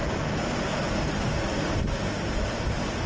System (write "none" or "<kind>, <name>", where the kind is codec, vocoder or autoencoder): none